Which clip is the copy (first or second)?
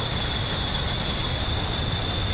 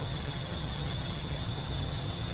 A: second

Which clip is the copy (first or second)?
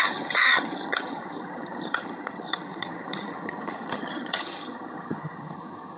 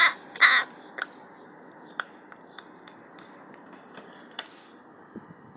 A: first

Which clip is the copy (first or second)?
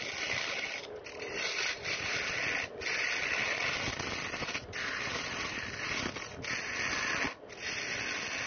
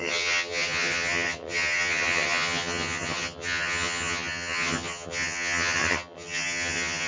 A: second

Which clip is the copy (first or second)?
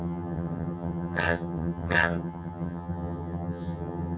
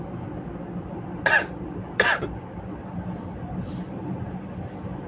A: first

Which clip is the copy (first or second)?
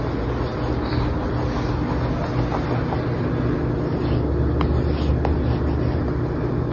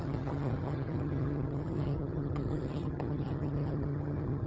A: second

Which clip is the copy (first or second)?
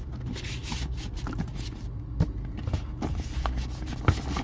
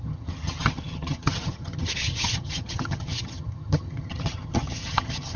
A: second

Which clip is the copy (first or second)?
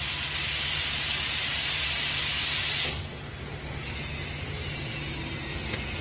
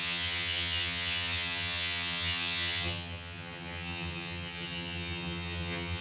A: second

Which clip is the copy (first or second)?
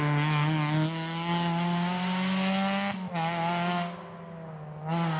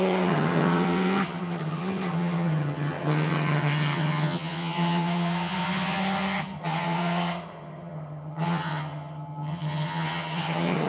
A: second